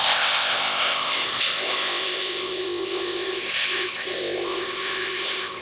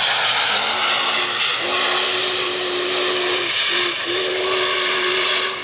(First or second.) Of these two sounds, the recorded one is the second